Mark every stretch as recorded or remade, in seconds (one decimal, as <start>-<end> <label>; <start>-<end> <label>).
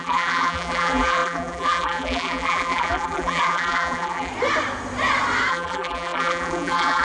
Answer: 0.0-4.3 remade; 4.3-5.5 recorded; 5.5-7.0 remade